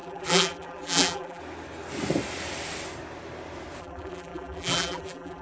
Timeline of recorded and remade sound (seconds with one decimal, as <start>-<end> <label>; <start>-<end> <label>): 0.0-1.4 remade; 1.4-3.8 recorded; 3.8-5.4 remade